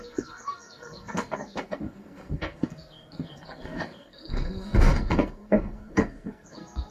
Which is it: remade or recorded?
remade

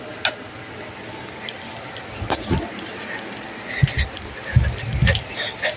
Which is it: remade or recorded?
recorded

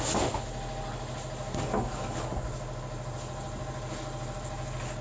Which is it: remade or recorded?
recorded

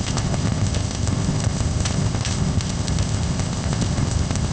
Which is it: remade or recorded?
remade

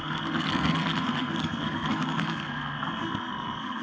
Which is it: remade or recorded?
remade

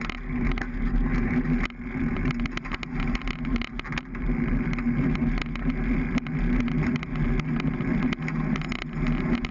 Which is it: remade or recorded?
recorded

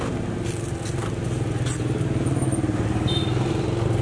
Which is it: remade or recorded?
recorded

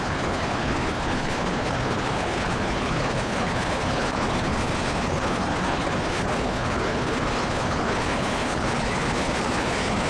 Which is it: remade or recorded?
remade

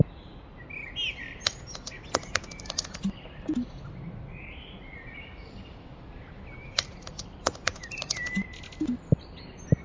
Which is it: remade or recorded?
recorded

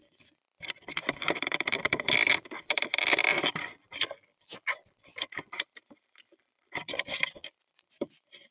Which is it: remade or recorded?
remade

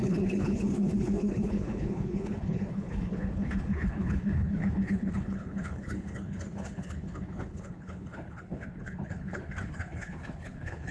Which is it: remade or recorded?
remade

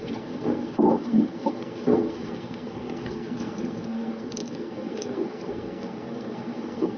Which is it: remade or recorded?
remade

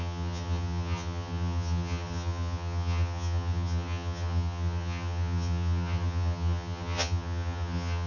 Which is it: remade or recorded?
remade